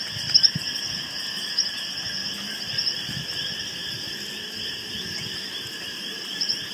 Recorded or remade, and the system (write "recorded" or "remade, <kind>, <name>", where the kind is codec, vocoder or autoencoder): recorded